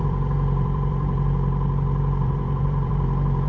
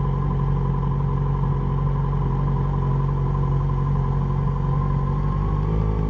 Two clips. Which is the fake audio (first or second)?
first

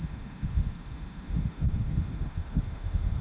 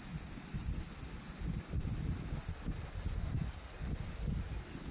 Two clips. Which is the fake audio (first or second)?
first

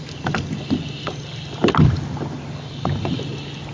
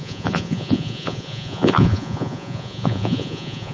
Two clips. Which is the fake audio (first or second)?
second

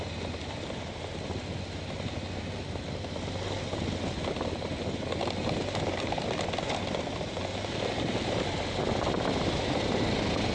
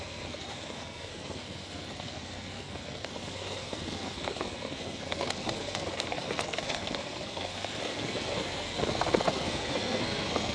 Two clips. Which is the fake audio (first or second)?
second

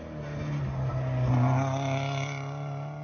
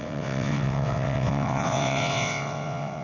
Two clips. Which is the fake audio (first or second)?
second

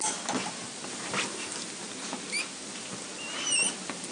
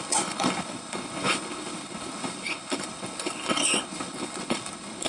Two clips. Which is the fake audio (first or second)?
second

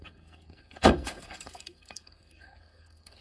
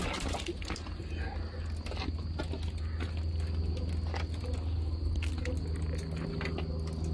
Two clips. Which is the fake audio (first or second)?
first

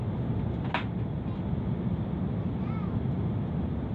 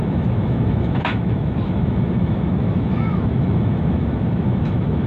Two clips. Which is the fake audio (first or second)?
second